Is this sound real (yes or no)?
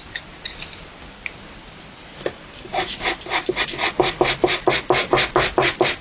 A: yes